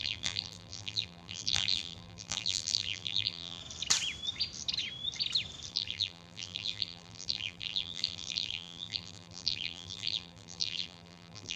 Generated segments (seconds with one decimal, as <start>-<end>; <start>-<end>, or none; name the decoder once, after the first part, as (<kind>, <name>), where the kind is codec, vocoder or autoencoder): 0.0-3.6 (vocoder, BigVGAN v2); 5.7-11.6